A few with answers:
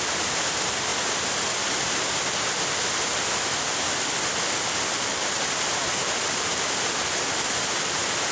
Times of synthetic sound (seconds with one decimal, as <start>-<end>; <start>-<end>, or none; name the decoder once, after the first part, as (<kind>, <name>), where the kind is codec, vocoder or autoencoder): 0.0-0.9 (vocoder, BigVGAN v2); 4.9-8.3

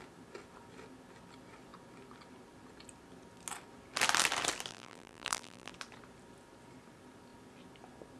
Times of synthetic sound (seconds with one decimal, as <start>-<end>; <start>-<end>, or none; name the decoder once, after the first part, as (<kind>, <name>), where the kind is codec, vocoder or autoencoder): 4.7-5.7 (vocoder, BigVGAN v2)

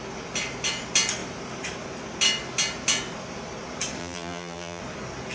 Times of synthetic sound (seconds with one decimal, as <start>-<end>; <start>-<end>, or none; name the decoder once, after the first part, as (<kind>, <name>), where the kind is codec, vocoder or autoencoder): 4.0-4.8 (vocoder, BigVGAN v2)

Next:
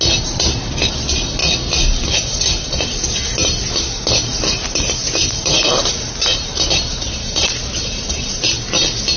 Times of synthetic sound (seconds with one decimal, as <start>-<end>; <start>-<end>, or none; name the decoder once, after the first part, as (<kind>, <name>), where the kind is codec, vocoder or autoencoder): 4.3-8.4 (vocoder, BigVGAN v2)

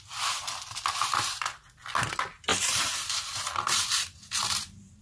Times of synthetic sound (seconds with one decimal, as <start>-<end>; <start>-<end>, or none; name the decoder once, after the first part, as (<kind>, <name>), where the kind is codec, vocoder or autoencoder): 2.5-5.0 (vocoder, BigVGAN v2)

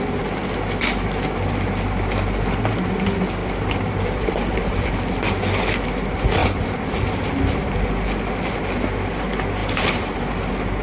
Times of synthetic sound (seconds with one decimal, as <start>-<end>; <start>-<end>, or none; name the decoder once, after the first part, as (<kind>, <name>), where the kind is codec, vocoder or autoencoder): 3.4-4.9 (vocoder, BigVGAN v2); 9.6-10.3

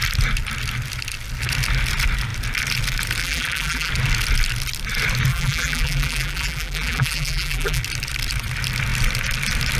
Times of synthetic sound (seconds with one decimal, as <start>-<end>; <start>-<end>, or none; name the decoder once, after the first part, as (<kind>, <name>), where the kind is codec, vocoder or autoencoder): 3.2-3.9 (vocoder, BigVGAN v2); 5.3-7.8

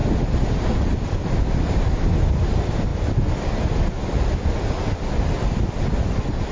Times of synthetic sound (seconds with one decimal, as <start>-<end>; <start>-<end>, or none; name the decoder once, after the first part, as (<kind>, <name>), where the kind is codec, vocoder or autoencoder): 0.0-1.4 (vocoder, BigVGAN v2)